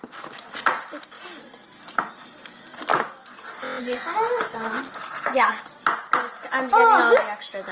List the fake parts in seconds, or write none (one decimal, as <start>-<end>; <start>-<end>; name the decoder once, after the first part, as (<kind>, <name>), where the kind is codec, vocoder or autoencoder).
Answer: 5.0-5.6 (codec, HILCodec)